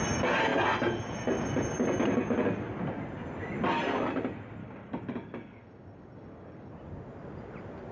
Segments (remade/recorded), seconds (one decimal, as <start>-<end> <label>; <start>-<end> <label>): 0.0-4.6 recorded; 4.6-6.7 remade; 6.7-7.9 recorded